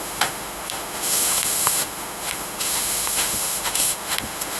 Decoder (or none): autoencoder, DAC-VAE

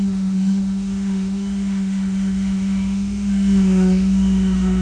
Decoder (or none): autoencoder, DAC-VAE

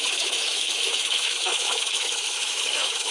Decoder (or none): autoencoder, DAC-VAE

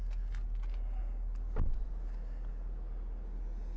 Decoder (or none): none